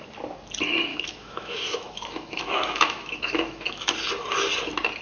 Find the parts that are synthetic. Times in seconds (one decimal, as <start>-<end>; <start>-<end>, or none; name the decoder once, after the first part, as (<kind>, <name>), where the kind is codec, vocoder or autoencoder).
0.9-3.9 (autoencoder, DAC-VAE)